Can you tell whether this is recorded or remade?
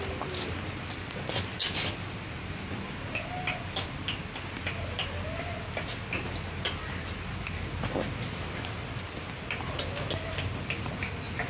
recorded